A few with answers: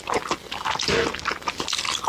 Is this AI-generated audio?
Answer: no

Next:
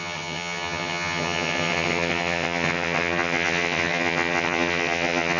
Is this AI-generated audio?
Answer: yes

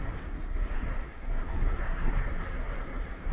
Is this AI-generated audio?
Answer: yes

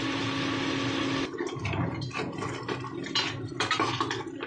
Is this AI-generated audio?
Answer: no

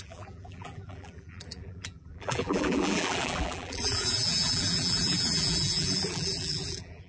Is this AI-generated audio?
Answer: yes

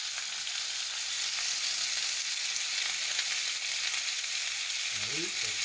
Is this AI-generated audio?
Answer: no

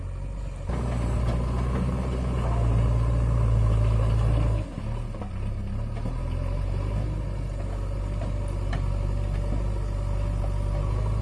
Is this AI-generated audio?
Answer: no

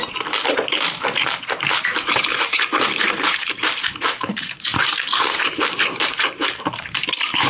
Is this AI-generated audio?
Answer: yes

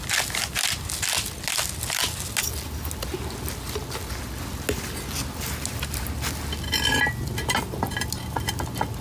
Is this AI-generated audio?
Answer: no